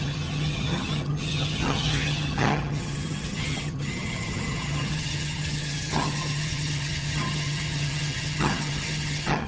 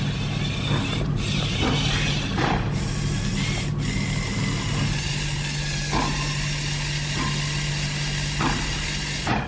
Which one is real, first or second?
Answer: second